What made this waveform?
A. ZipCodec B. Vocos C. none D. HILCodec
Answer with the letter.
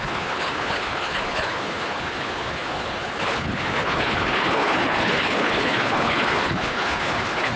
D